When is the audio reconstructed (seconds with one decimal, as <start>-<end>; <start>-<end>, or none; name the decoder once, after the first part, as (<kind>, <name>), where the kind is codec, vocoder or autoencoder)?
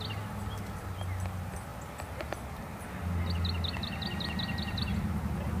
none